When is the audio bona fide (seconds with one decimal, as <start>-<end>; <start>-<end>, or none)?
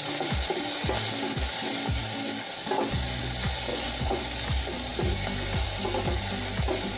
0.0-3.7; 4.2-7.0